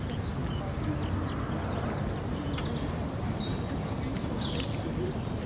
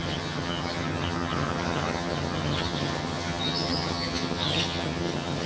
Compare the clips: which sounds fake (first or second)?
second